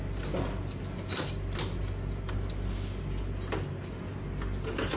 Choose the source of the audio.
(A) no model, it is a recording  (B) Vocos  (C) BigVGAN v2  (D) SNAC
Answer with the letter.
A